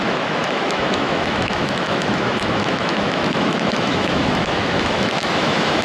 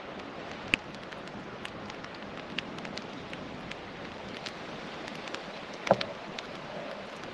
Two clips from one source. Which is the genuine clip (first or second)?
second